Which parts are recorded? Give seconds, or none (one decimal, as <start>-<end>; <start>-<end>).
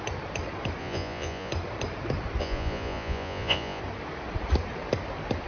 0.0-0.8; 1.5-2.4; 3.8-5.5